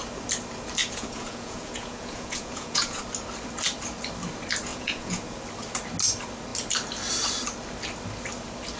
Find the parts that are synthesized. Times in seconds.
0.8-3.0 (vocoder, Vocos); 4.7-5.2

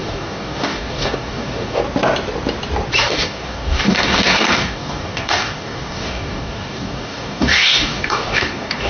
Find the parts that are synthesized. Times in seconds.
0.0-1.8 (codec, DAC); 3.0-8.9

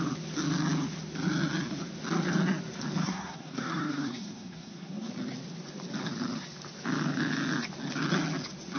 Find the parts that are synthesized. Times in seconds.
3.0-5.1 (codec, SNAC)

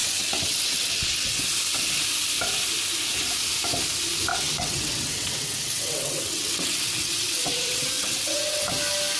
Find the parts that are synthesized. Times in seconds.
0.0-1.4 (vocoder, WaveNeXt); 4.3-8.7